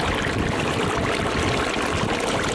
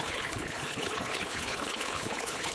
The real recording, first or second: first